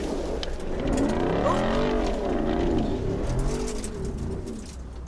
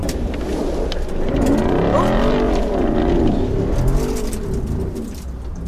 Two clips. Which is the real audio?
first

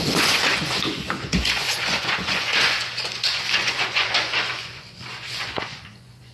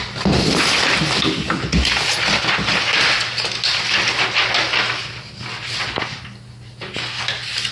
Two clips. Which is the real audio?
second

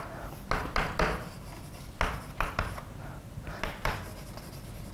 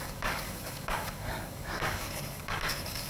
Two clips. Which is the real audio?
first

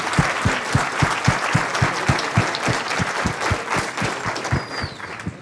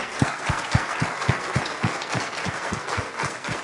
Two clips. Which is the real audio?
first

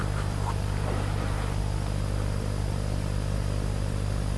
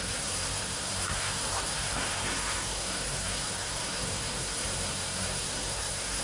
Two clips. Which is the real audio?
first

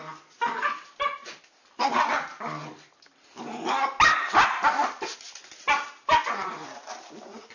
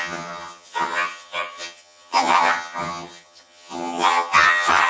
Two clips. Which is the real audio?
first